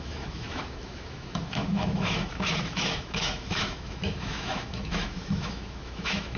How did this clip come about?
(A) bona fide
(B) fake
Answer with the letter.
B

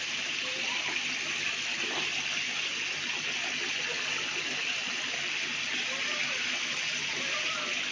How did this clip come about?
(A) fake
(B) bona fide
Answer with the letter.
B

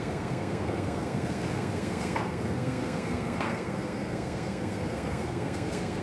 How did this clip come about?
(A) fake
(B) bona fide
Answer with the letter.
A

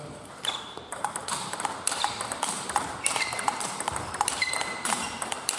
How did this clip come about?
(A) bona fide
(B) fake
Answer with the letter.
B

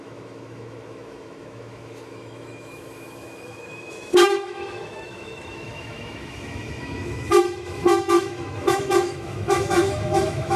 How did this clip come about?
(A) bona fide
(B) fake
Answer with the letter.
B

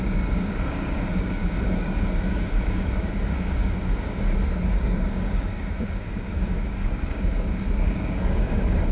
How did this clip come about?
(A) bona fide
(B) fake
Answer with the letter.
B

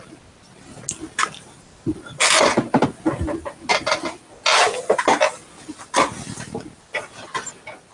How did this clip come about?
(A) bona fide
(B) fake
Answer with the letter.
A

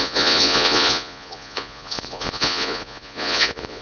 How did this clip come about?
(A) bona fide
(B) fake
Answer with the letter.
B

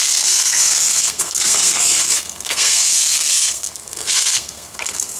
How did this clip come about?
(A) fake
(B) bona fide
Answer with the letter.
A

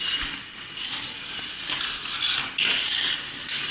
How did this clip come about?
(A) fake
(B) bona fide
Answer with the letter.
B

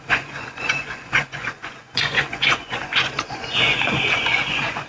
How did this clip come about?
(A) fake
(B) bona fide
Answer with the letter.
A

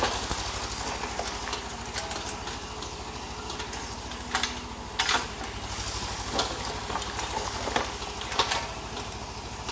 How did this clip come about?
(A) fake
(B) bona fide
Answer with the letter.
B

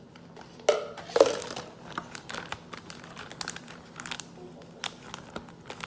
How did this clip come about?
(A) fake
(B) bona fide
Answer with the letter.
B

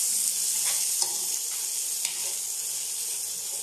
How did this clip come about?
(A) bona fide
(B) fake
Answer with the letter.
A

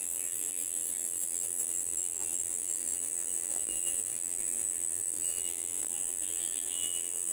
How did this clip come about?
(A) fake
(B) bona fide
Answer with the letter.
A